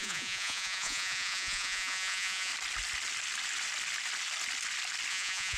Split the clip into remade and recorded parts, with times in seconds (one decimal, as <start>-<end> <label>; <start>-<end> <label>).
0.0-2.5 remade; 2.5-5.1 recorded; 5.1-5.6 remade

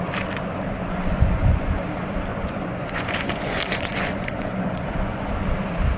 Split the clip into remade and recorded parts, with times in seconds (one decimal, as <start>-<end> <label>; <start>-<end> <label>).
0.0-0.8 recorded; 0.8-1.7 remade; 1.7-2.3 recorded; 2.3-5.3 remade; 5.3-6.0 recorded